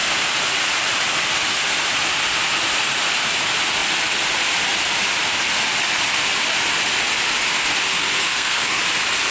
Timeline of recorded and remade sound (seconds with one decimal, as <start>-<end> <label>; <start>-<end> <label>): 0.0-7.9 recorded; 7.9-8.8 remade; 8.8-9.3 recorded